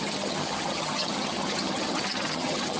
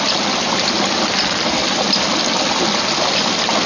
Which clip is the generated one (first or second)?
first